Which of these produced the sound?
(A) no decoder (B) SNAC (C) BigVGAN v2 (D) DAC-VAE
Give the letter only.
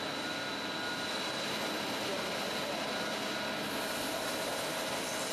A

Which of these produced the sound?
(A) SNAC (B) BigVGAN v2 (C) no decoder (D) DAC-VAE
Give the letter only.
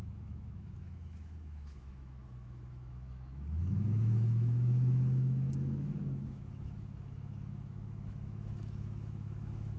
D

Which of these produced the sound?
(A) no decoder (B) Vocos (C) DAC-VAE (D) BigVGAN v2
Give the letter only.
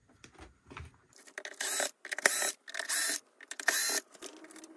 A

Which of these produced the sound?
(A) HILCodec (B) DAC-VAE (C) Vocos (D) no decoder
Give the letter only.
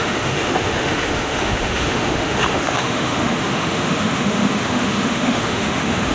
B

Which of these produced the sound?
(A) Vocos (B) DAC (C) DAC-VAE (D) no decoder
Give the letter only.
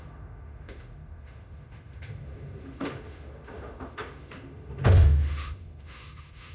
C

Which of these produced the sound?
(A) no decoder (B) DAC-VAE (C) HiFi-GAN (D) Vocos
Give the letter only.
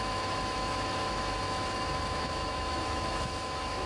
B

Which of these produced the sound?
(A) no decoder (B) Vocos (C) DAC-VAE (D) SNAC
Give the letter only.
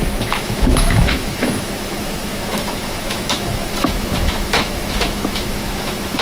C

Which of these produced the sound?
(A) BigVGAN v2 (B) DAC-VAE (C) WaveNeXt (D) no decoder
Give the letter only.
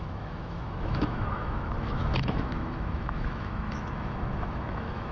B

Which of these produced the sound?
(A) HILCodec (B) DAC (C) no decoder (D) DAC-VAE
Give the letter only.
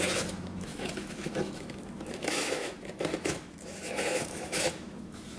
D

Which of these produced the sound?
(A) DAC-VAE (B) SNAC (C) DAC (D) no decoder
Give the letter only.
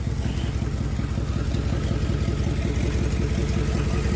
D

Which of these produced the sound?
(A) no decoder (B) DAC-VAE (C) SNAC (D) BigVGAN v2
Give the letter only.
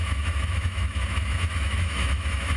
B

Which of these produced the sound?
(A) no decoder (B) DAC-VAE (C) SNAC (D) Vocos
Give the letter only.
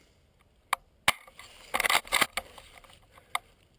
A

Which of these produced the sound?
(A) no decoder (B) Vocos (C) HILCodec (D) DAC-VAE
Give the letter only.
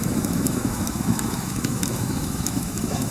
D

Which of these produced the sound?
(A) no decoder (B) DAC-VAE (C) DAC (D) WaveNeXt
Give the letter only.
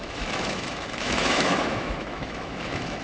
B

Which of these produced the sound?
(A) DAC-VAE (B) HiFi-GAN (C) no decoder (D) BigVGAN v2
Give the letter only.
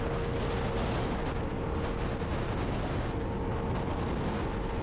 C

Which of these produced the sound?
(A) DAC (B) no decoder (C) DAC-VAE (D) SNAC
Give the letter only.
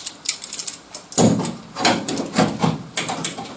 B